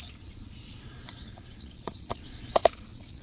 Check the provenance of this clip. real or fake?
fake